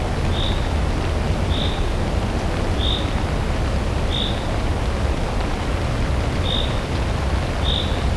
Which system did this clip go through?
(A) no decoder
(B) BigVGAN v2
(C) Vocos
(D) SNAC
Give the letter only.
A